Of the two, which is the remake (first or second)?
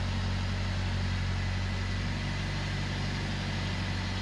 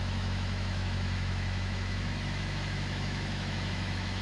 second